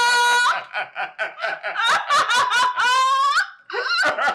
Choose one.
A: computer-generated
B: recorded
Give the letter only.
B